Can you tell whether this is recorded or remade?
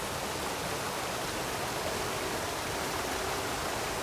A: recorded